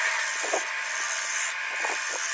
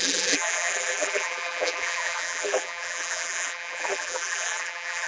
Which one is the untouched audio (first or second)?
first